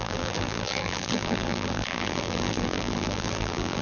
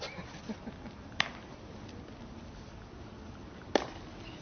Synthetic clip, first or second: first